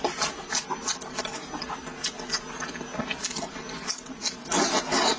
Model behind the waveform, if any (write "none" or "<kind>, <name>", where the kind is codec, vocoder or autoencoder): none